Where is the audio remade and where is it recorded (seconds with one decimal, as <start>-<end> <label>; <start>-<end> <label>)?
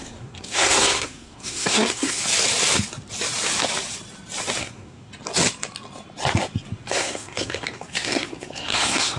0.0-2.2 remade; 2.2-4.6 recorded; 4.6-5.1 remade; 5.1-6.9 recorded; 6.9-9.2 remade